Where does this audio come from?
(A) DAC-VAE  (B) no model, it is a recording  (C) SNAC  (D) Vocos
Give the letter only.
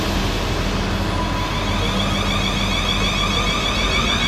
B